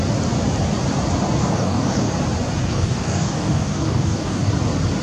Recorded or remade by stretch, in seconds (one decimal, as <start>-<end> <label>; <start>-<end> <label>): 0.0-1.4 recorded; 1.4-2.1 remade; 2.1-2.6 recorded; 2.6-4.5 remade; 4.5-5.0 recorded